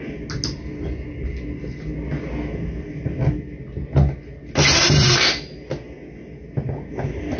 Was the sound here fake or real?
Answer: real